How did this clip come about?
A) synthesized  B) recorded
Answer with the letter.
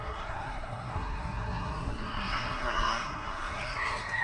A